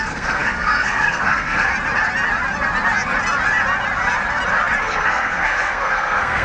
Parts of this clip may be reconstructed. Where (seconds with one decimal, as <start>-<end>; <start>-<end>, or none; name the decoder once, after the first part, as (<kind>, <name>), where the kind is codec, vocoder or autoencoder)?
0.0-1.7 (codec, SNAC); 4.8-6.4